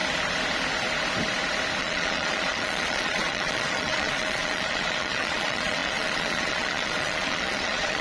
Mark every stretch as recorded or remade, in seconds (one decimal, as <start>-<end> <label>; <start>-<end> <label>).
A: 0.0-1.8 recorded; 1.8-8.0 remade

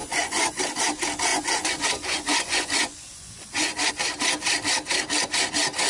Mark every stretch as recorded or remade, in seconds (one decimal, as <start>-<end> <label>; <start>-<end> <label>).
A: 0.0-0.6 remade; 0.6-1.3 recorded; 1.3-3.9 remade; 3.9-5.9 recorded

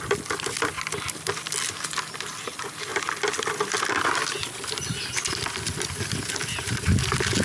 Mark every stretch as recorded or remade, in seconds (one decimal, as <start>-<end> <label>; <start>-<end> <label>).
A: 0.0-7.4 recorded

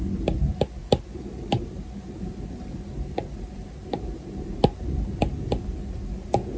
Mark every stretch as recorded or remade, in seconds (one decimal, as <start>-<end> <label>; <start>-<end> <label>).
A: 0.0-6.6 recorded

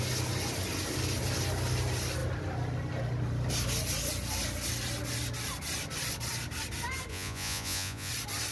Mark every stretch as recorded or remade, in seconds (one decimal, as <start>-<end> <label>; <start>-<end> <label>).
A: 0.0-7.1 recorded; 7.1-8.1 remade; 8.1-8.5 recorded